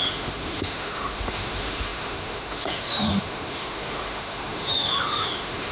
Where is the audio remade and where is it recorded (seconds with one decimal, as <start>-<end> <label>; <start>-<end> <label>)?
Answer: 0.0-5.7 remade